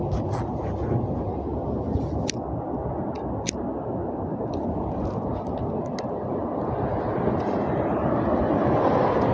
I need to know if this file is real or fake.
real